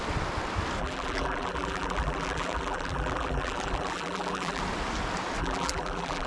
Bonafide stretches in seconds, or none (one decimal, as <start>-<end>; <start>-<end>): 0.0-0.8; 4.6-5.4